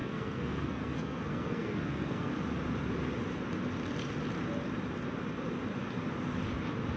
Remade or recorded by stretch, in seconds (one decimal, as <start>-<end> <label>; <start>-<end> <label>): 0.0-2.3 remade; 2.3-7.0 recorded